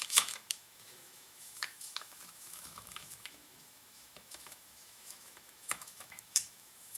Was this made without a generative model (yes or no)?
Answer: no